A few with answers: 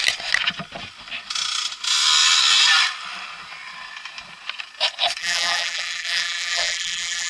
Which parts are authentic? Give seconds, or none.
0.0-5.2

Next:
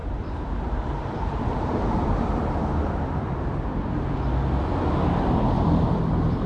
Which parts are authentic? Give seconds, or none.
3.9-6.5